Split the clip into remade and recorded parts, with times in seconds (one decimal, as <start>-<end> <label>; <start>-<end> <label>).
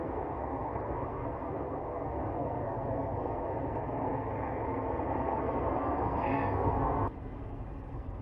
0.0-8.2 remade